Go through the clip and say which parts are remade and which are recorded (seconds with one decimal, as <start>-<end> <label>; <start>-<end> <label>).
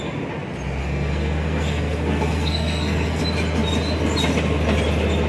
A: 0.0-0.8 recorded; 0.8-3.2 remade; 3.2-5.3 recorded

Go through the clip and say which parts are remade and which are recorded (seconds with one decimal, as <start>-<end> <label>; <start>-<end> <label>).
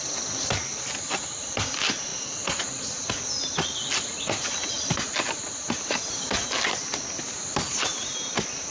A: 0.0-8.7 recorded